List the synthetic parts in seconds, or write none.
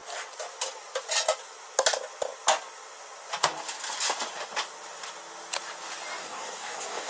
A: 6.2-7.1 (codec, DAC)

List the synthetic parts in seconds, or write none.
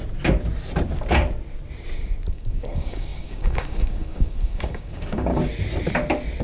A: 2.3-5.3 (codec, DAC)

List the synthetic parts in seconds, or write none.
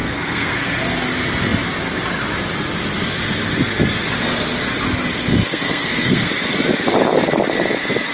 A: 0.0-0.8 (codec, SNAC); 5.5-6.3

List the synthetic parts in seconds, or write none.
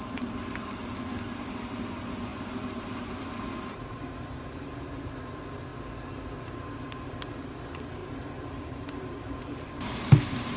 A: 2.3-5.1 (vocoder, BigVGAN v2); 8.0-10.0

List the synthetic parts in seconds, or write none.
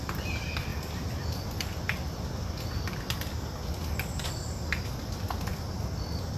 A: 0.7-1.5 (vocoder, BigVGAN v2)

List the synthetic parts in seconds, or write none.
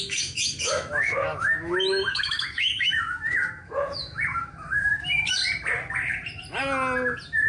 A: 0.0-5.4 (autoencoder, DAC-VAE)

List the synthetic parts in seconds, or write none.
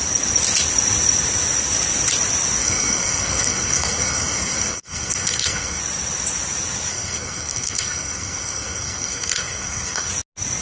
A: 2.6-5.8 (codec, SNAC); 6.9-10.1